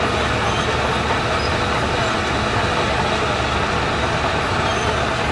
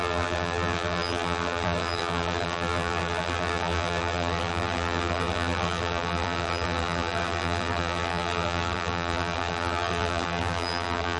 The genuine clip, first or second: first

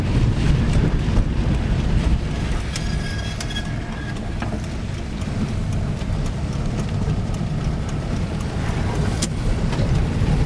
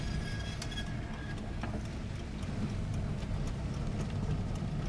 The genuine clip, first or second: second